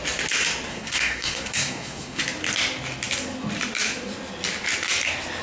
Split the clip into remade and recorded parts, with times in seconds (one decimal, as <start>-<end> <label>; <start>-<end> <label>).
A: 0.0-0.7 recorded; 0.7-2.2 remade; 2.2-5.4 recorded